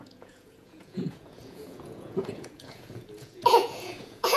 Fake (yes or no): yes